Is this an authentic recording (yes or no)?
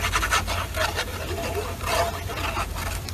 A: yes